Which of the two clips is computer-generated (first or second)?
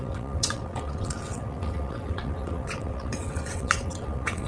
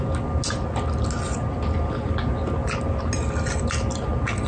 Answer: first